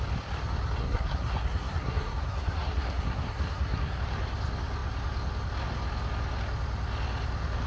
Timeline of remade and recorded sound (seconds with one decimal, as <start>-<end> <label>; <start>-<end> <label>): 0.0-0.8 recorded; 0.8-4.0 remade; 4.0-7.7 recorded